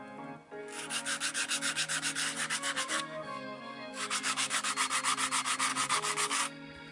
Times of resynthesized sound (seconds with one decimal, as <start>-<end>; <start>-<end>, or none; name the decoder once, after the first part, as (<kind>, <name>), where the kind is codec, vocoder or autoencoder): 0.6-4.7 (codec, DAC); 5.7-6.4